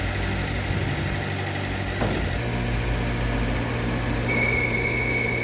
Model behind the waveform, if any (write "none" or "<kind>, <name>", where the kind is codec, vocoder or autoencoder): none